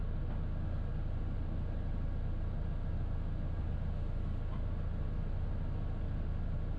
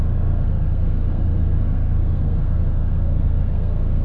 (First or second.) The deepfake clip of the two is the second